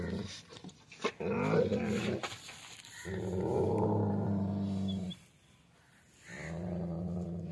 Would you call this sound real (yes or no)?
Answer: yes